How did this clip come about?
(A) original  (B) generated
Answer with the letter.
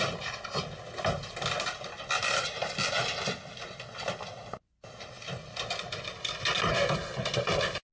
A